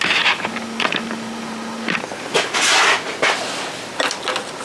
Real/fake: fake